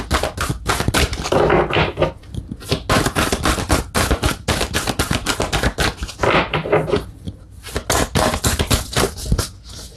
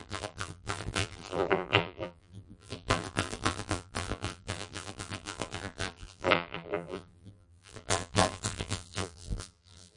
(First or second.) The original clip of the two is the first